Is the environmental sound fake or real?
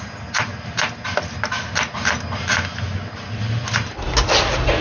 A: real